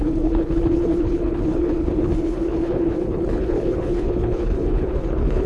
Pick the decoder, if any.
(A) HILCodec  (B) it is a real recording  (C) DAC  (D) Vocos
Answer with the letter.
A